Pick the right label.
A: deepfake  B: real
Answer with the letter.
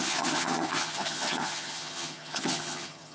A